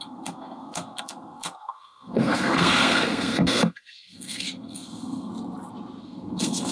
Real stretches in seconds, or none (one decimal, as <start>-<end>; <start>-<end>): 5.3-6.0